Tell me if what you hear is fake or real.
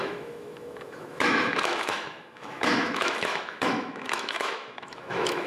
fake